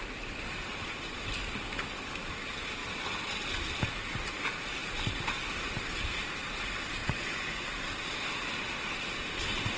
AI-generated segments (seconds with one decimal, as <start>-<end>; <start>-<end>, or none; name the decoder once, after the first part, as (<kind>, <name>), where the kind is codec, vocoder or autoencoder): 7.0-7.7 (vocoder, Vocos)

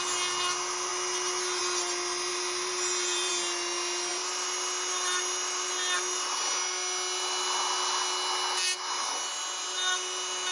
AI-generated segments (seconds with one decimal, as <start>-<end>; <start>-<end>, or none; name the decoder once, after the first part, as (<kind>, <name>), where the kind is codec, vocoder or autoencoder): 2.3-3.3 (vocoder, BigVGAN v2)

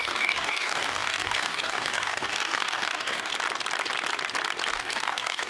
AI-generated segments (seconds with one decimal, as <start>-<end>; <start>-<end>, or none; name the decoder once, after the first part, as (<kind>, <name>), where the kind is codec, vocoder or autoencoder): 0.0-3.3 (codec, DAC); 4.7-5.5

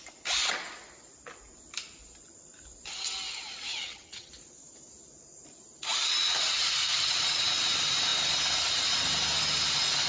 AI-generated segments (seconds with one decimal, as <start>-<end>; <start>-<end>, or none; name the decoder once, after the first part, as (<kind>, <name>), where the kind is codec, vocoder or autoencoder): 3.7-4.3 (vocoder, HiFi-GAN)